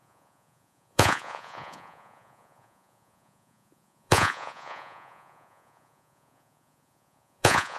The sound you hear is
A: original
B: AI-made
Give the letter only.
B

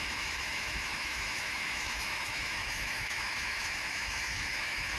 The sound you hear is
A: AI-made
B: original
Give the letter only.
A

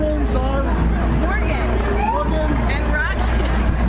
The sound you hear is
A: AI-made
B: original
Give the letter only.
B